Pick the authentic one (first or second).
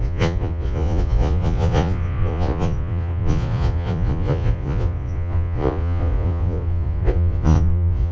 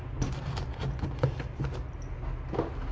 second